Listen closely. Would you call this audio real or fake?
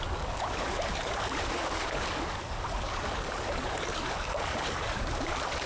fake